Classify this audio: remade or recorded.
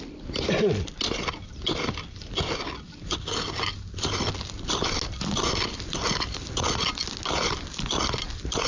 recorded